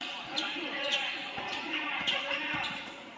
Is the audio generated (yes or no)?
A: yes